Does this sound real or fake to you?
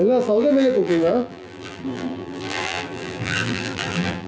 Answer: fake